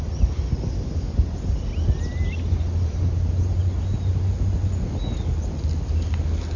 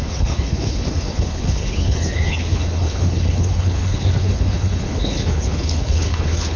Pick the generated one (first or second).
second